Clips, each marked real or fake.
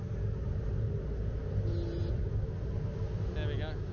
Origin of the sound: real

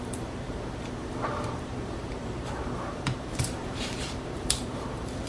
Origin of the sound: fake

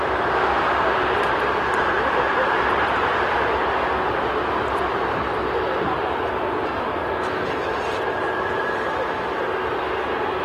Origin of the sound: real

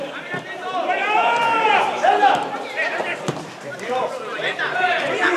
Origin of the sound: fake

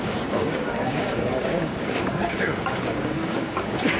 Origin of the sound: fake